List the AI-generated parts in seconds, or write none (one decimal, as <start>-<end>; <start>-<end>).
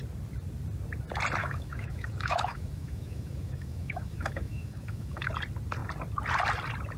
1.4-5.3